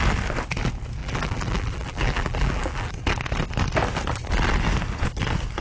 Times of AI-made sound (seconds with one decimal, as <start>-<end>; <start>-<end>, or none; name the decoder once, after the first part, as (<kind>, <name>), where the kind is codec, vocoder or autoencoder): 1.0-2.9 (vocoder, BigVGAN v2)